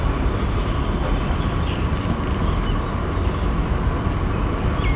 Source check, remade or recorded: recorded